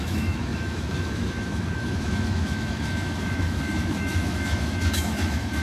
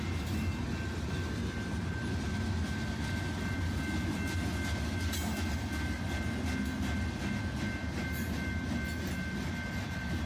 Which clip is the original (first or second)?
second